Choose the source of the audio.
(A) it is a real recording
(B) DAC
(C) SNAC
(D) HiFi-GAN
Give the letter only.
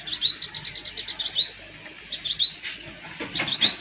A